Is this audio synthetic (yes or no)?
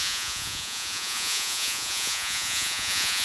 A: yes